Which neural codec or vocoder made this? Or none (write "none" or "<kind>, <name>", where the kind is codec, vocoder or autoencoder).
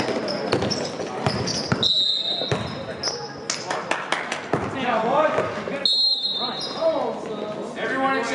none